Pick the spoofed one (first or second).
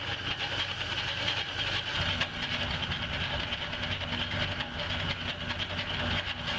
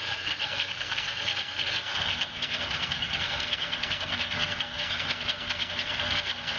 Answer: second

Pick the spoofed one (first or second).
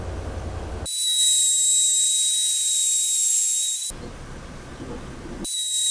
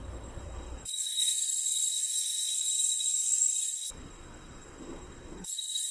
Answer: second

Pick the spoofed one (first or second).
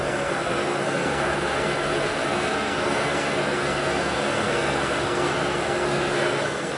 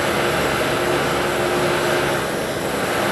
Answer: first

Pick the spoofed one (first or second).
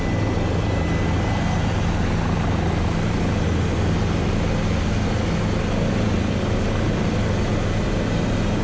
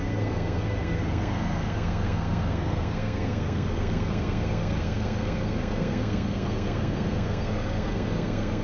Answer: second